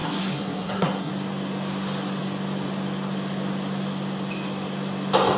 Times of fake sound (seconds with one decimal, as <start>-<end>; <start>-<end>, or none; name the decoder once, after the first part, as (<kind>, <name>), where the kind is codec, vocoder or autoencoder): 0.0-1.1 (codec, SNAC)

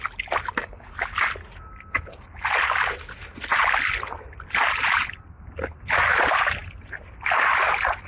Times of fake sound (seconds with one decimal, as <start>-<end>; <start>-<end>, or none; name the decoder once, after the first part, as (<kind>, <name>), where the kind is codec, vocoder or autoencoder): none

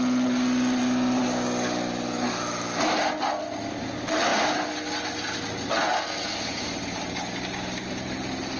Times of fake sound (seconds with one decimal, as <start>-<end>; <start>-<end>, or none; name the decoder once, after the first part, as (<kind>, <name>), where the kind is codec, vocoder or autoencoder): none

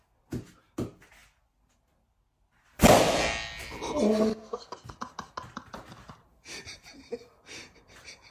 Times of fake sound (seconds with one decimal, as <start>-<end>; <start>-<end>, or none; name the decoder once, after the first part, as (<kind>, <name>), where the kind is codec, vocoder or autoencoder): 4.3-4.9 (codec, SNAC)

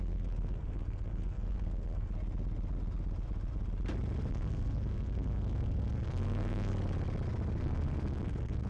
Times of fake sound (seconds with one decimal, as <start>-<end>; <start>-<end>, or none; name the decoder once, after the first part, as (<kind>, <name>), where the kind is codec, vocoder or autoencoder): 0.0-2.1 (codec, SNAC); 4.3-6.7; 7.6-8.7

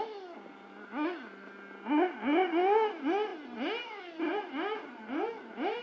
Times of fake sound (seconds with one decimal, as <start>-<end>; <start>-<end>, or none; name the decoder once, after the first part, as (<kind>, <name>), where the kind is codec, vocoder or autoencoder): none

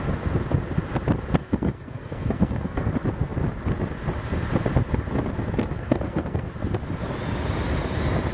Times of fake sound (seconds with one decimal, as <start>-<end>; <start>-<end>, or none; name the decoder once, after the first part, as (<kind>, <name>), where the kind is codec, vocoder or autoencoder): 1.4-2.9 (codec, SNAC); 5.8-6.5